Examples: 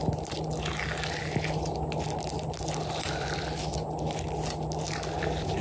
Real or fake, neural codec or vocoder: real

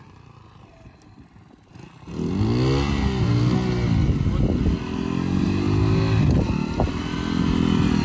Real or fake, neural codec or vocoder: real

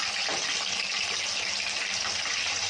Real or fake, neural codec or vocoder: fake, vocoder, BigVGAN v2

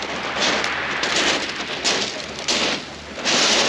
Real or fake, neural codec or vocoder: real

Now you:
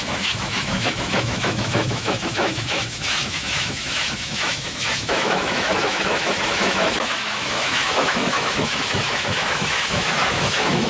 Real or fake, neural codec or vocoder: fake, autoencoder, DAC-VAE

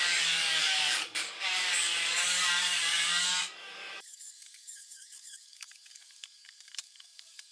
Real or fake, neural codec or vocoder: fake, codec, DAC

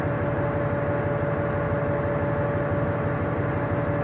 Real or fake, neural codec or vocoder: real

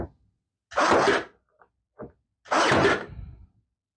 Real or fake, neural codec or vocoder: real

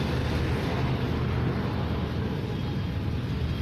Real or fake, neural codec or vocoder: real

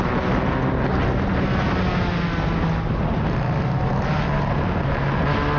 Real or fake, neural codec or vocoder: real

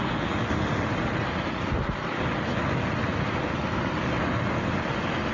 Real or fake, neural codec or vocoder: real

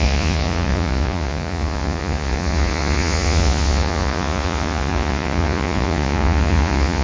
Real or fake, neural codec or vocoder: fake, vocoder, Vocos